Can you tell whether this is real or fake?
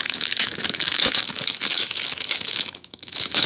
fake